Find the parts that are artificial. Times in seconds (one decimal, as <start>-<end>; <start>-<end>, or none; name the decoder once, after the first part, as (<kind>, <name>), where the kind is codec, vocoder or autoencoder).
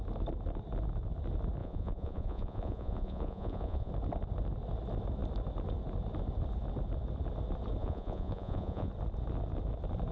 1.6-3.9 (vocoder, Vocos); 7.8-8.9